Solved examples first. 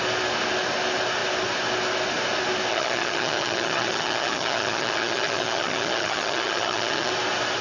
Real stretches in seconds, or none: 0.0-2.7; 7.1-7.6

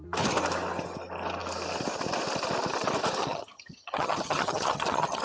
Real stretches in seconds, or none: 0.0-3.2

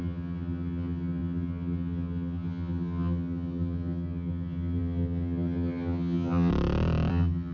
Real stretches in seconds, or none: 6.5-7.1

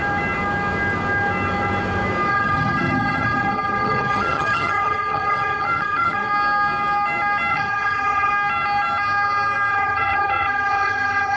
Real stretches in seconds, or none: 0.0-2.3; 6.3-7.5; 8.3-9.7

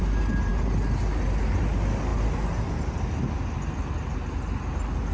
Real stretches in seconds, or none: 0.0-5.1